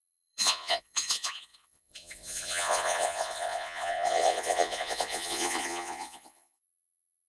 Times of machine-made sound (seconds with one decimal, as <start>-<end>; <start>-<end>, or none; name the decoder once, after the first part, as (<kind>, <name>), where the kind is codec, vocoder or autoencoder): 0.0-7.3 (vocoder, Vocos)